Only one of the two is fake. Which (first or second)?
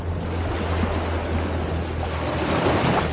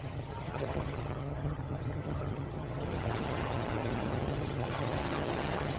second